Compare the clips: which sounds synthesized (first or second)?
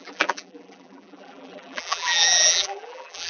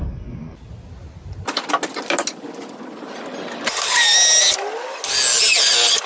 first